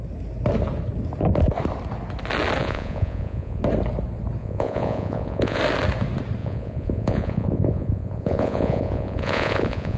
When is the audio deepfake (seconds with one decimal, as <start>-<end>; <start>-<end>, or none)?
2.6-3.6; 4.4-5.6; 6.4-10.0

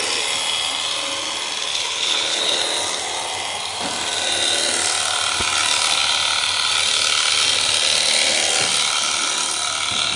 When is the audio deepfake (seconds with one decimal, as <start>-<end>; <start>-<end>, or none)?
1.7-2.6